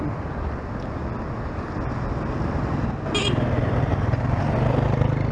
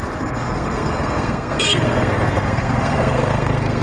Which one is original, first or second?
first